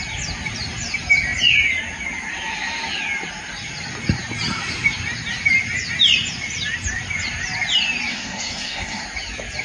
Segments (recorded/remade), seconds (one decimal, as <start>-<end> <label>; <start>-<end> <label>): 0.0-8.1 recorded; 8.1-9.0 remade; 9.0-9.6 recorded